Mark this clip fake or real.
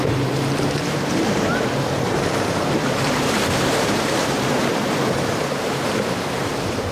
fake